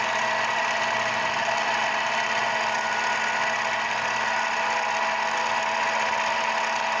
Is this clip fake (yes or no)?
no